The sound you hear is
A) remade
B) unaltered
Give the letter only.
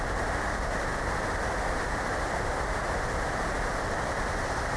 B